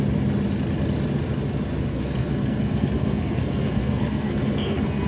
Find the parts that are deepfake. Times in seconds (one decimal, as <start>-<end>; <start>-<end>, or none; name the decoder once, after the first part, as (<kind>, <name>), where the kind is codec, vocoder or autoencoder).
1.9-5.1 (codec, SNAC)